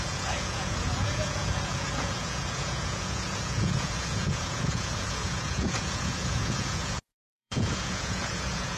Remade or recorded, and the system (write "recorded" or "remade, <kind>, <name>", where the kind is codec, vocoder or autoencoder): remade, vocoder, Vocos